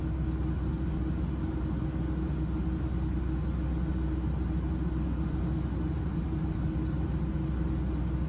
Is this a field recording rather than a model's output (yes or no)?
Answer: yes